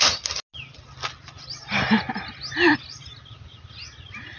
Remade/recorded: recorded